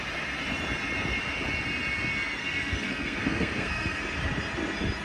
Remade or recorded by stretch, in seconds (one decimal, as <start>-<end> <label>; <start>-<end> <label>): 0.0-2.4 recorded; 2.4-4.0 remade; 4.0-5.0 recorded